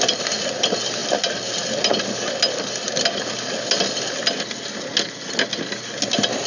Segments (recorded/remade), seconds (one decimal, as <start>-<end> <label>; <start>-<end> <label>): 0.0-6.5 recorded